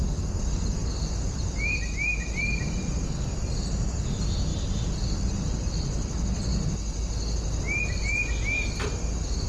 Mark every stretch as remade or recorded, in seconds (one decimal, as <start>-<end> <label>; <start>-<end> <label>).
0.0-0.8 recorded; 0.8-3.0 remade; 3.0-6.5 recorded; 6.5-7.8 remade; 7.8-9.5 recorded